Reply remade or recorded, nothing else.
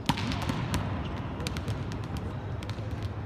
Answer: recorded